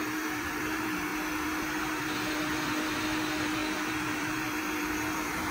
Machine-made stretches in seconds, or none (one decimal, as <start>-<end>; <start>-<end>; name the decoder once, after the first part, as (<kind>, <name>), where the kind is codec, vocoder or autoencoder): 0.0-5.5 (vocoder, BigVGAN v2)